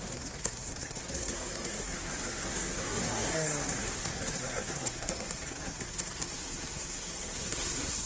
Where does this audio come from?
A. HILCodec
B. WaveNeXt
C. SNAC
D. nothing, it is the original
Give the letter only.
C